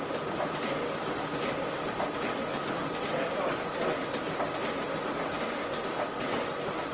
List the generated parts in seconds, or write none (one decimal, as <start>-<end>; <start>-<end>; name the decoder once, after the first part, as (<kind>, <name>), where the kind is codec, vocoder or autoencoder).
none